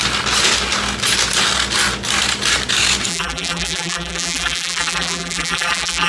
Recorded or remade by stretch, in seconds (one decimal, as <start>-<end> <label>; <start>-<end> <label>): 0.0-3.1 recorded; 3.1-6.1 remade